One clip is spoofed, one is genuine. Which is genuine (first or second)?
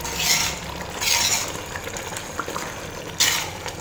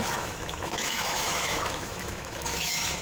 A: first